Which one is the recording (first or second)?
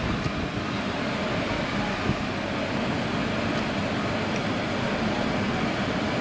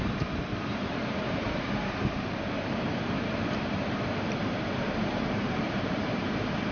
first